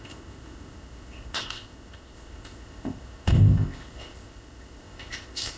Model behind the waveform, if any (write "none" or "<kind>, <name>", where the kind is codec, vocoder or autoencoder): codec, ZipCodec